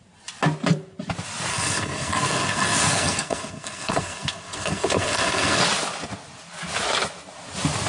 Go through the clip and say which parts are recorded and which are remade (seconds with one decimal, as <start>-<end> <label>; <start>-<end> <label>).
0.0-1.5 recorded; 1.5-5.6 remade; 5.6-7.9 recorded